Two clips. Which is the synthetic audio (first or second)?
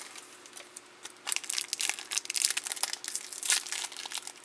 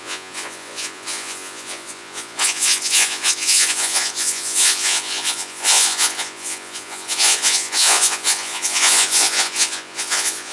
second